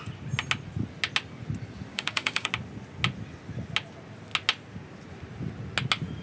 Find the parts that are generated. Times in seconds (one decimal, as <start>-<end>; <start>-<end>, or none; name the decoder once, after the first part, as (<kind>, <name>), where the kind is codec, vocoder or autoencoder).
1.9-2.5 (codec, DAC)